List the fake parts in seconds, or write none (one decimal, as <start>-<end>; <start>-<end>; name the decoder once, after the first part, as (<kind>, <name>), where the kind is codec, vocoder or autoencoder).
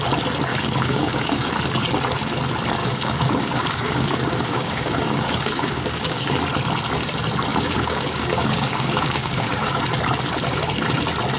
0.5-1.5 (codec, DAC); 2.8-6.3; 7.5-9.8